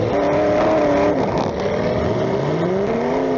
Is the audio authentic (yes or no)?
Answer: yes